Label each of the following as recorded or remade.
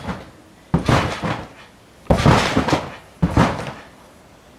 recorded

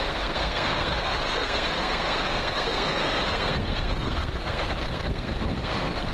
remade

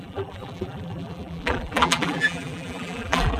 remade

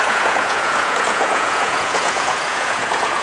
remade